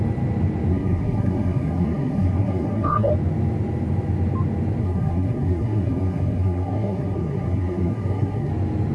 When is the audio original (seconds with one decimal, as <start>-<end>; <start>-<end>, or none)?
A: 0.0-0.7; 3.1-4.8; 8.5-8.9